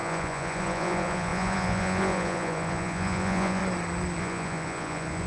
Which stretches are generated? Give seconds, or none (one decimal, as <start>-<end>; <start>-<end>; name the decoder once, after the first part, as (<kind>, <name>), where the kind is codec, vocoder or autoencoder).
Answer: 0.0-3.6 (vocoder, Vocos); 4.2-5.3